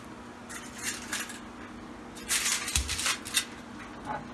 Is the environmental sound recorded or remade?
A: recorded